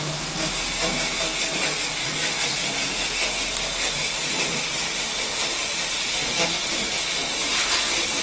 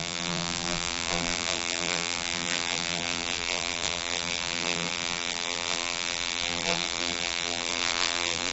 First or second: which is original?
first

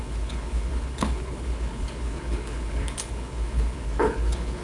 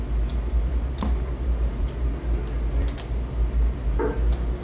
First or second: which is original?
second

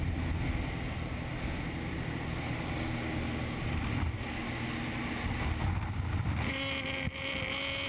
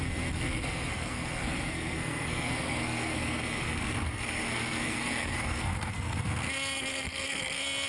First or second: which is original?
first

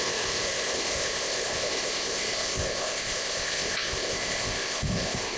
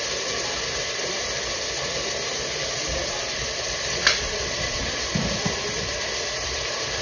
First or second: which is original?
second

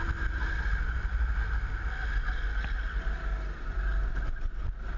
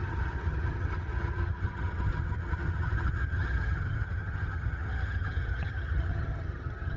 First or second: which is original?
first